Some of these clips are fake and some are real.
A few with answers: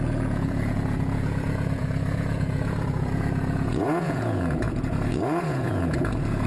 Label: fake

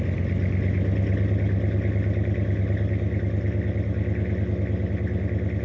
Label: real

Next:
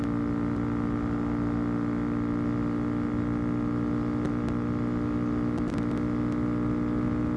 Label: real